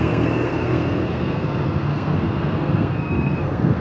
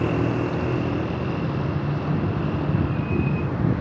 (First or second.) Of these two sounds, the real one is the second